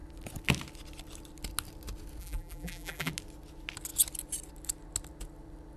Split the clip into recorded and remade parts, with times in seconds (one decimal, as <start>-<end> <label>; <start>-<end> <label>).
0.0-2.2 recorded; 2.2-3.1 remade; 3.1-5.8 recorded